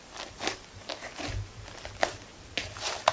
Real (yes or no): yes